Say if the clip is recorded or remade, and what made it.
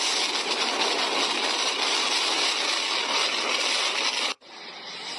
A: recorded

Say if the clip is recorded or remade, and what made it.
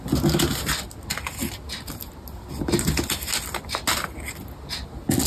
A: recorded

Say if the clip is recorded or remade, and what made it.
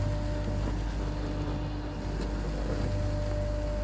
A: recorded